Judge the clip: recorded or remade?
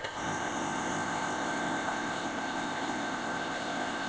remade